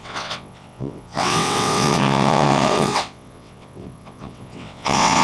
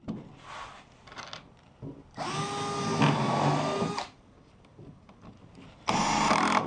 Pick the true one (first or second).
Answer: second